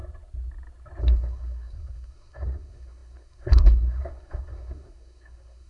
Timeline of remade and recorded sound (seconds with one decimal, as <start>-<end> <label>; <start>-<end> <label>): 0.0-1.0 recorded; 1.0-5.7 remade